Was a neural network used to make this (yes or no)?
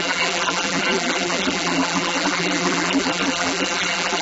yes